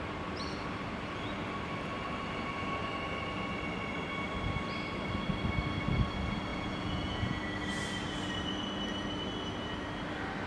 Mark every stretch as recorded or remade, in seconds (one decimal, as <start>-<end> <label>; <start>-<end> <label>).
0.0-6.5 recorded; 6.5-7.4 remade; 7.4-10.5 recorded